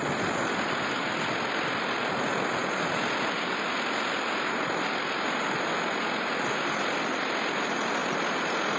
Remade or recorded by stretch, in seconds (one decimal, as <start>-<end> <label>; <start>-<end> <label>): 0.0-8.8 recorded